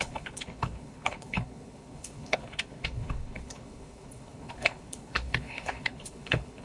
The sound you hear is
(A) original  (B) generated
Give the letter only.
B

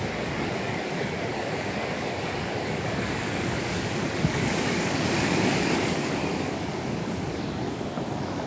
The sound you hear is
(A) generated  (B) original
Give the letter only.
A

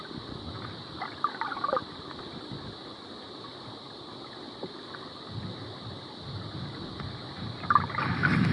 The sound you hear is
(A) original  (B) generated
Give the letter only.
A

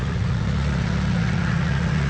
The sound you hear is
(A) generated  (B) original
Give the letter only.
A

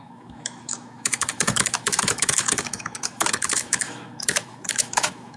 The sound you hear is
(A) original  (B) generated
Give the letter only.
B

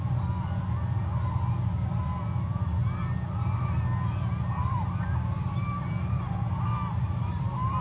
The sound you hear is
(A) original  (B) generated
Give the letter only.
A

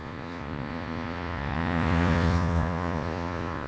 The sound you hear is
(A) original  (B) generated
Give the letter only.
B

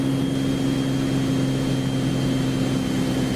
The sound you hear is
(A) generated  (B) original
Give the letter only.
B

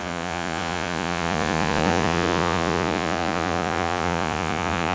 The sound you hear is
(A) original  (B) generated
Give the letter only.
B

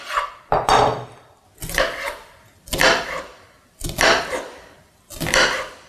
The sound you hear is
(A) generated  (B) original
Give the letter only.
B